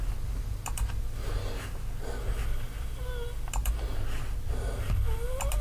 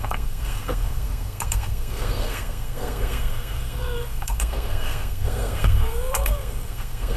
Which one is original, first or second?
first